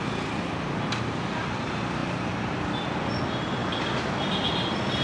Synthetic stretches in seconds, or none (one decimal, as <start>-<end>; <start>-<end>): none